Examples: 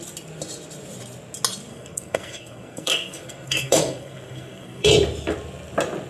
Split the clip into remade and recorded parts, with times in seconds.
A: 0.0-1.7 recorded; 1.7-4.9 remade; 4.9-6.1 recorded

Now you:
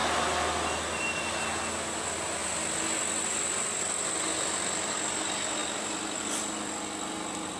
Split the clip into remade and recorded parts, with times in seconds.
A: 0.0-7.6 recorded

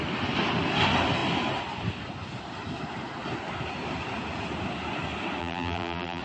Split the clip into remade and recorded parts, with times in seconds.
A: 0.0-5.4 recorded; 5.4-6.2 remade

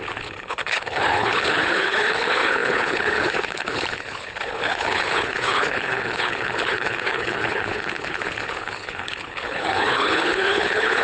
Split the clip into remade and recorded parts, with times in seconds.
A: 0.0-11.0 remade